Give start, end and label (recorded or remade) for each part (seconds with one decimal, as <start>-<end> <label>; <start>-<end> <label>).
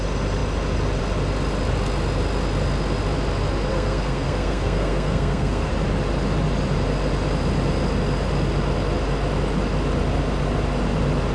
0.0-3.7 recorded; 3.7-5.7 remade; 5.7-11.3 recorded